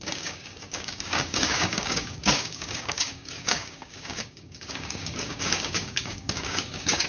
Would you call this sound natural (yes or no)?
no